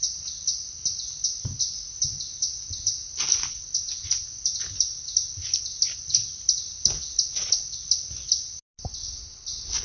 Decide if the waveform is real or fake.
real